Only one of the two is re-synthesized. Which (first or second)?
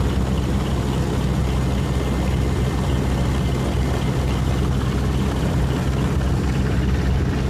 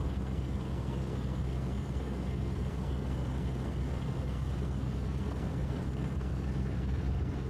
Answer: second